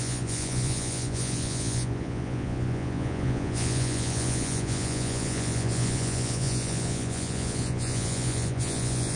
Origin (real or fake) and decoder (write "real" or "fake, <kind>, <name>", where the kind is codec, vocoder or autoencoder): fake, vocoder, Vocos